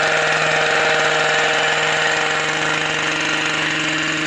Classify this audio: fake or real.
real